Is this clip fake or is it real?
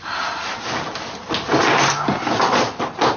real